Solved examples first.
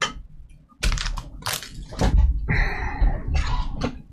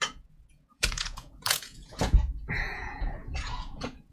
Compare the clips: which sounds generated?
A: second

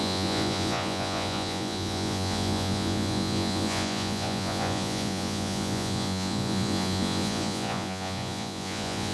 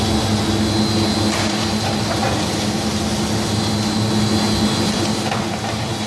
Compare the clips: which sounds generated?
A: first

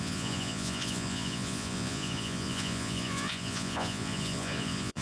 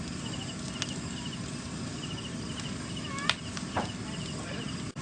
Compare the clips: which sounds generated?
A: first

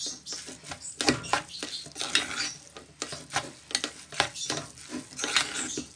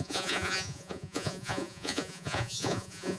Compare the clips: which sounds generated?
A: second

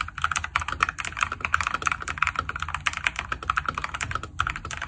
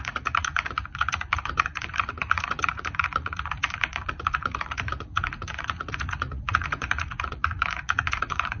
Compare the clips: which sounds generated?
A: second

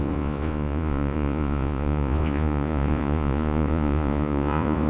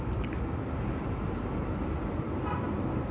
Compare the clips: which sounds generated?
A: first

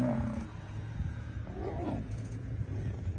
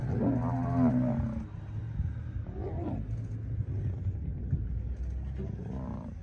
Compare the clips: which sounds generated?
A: first